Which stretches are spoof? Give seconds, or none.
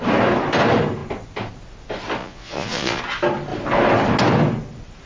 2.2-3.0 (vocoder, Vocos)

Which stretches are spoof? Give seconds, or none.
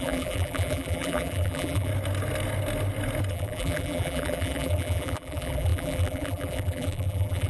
0.0-1.9 (vocoder, BigVGAN v2); 3.3-7.5